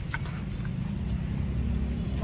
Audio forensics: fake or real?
real